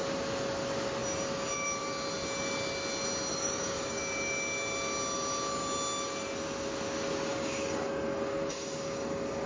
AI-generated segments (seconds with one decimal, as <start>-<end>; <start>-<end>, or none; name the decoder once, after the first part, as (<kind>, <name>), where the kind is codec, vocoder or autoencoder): 3.3-4.0 (codec, DAC); 7.3-9.5